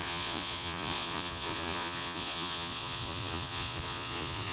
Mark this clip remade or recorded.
remade